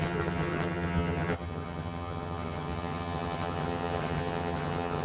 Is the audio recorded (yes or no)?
no